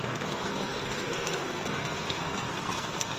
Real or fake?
fake